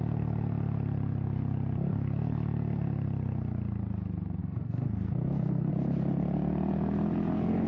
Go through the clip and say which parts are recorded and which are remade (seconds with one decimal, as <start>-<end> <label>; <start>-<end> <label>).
0.0-4.4 recorded; 4.4-5.7 remade; 5.7-7.7 recorded